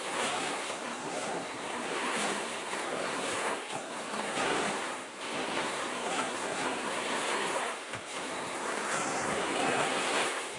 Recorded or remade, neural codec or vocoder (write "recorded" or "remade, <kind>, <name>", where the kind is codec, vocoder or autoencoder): remade, codec, SNAC